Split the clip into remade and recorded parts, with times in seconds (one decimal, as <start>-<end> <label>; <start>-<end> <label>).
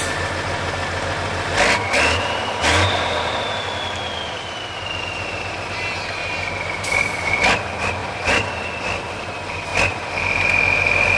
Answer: 0.0-6.2 recorded; 6.2-7.3 remade; 7.3-8.0 recorded; 8.0-8.7 remade; 8.7-11.2 recorded